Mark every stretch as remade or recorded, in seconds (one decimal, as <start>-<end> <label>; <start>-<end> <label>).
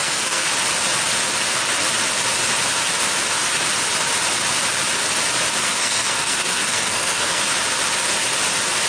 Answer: 0.0-0.5 remade; 0.5-5.6 recorded; 5.6-7.4 remade; 7.4-8.9 recorded